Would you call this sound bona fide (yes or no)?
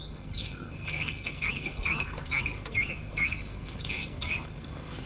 no